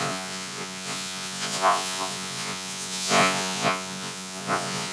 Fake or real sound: fake